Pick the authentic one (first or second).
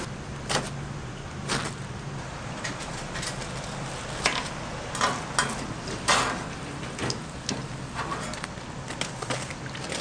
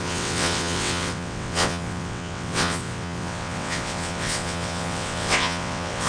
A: first